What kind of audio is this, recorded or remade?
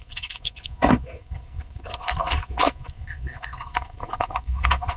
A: remade